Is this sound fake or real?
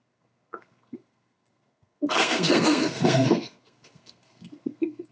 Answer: fake